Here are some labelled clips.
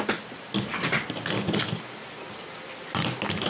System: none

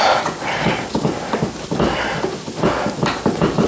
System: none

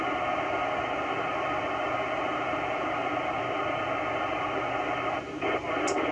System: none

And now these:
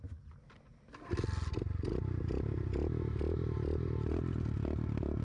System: none